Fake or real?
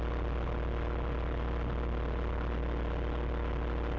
real